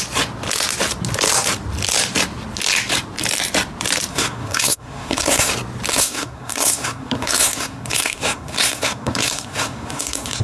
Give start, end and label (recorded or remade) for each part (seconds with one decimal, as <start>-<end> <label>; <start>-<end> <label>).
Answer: 0.0-4.1 recorded; 4.1-5.5 remade; 5.5-5.9 recorded; 5.9-10.4 remade